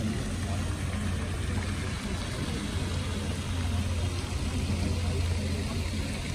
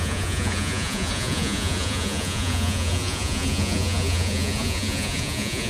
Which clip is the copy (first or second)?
second